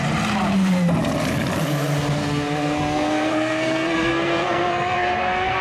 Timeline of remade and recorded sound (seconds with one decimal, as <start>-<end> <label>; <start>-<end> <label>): 0.0-2.2 recorded; 2.2-5.6 remade